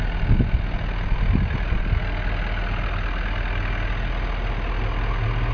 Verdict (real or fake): real